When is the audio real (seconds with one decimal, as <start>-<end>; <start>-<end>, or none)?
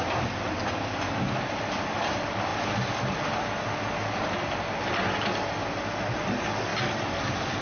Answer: 0.0-7.6